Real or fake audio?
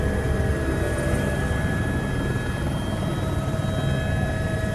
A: real